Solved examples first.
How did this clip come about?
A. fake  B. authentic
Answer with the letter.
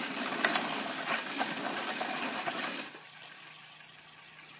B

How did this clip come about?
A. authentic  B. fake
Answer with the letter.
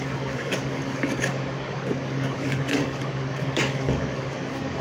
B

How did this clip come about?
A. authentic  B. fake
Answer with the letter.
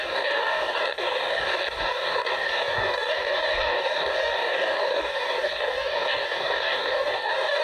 B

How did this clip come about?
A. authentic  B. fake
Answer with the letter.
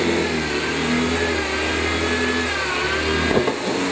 A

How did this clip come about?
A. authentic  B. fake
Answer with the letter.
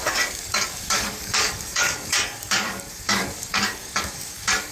B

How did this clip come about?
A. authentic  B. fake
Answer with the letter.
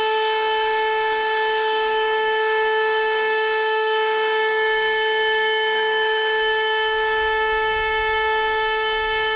B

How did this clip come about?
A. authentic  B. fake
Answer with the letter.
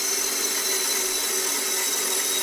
A